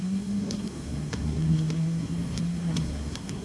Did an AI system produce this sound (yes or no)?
yes